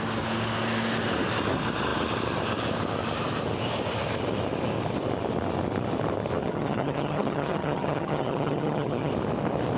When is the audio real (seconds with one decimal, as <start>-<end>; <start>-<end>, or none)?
0.0-6.4; 9.1-9.8